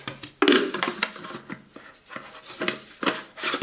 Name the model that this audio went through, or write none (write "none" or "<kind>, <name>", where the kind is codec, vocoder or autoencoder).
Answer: none